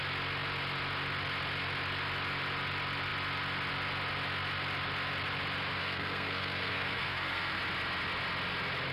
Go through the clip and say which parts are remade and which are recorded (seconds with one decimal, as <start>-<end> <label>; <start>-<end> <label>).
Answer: 0.0-5.8 recorded; 5.8-7.6 remade; 7.6-8.9 recorded